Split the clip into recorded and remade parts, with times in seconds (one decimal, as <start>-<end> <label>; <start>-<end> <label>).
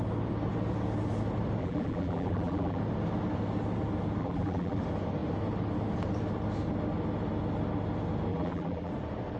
0.0-1.6 recorded; 1.6-2.8 remade; 2.8-4.2 recorded; 4.2-4.8 remade; 4.8-8.3 recorded; 8.3-8.9 remade; 8.9-9.4 recorded